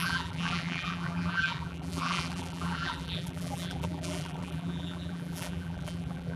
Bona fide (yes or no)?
no